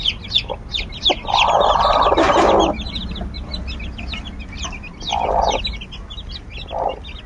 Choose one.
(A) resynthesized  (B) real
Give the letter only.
B